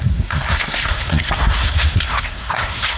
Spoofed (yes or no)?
yes